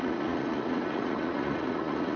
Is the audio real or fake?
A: fake